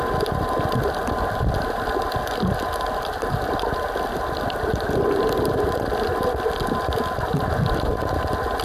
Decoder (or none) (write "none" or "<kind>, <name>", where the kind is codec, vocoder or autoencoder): none